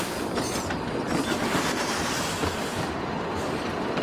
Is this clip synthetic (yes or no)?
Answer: no